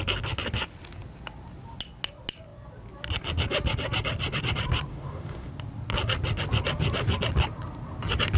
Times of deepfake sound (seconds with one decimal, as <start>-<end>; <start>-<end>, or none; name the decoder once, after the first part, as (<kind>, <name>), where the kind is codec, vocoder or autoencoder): 4.9-5.5 (autoencoder, DAC-VAE)